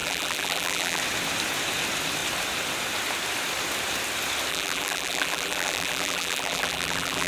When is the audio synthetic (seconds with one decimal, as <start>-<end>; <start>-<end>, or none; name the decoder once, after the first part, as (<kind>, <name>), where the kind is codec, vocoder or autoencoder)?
0.0-1.0 (vocoder, BigVGAN v2); 4.5-7.3